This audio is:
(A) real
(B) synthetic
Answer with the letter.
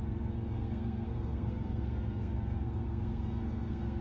B